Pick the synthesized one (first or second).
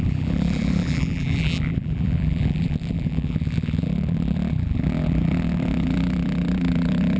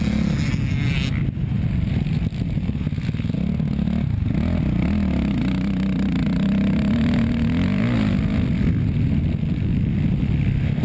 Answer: first